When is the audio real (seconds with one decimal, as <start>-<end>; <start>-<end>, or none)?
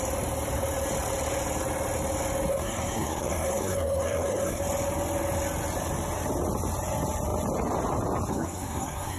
0.0-2.5; 4.6-8.3